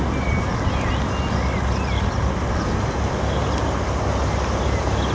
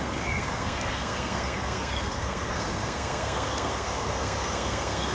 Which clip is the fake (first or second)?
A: second